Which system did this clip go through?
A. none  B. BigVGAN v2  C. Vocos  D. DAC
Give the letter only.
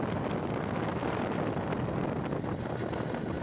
A